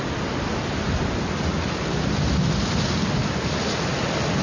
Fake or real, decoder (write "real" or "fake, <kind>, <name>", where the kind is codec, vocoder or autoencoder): real